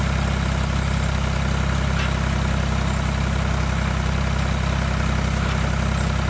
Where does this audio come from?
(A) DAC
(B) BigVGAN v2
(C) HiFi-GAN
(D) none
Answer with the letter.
D